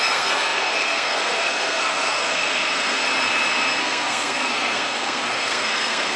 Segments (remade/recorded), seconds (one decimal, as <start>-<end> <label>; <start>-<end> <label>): 0.0-3.0 remade; 3.0-3.8 recorded; 3.8-6.2 remade